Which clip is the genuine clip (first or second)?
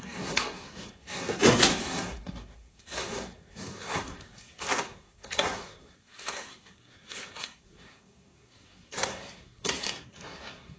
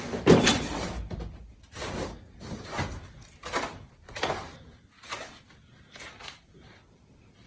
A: second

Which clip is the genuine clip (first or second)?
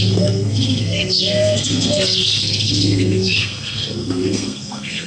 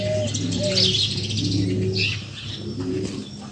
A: second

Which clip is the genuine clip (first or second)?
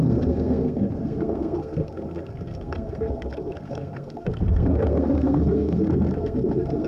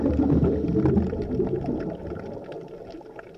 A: second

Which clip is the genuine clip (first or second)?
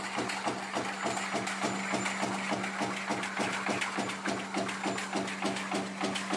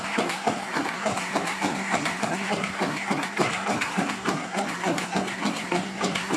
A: first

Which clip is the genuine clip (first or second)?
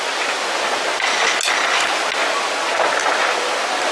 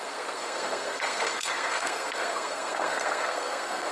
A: first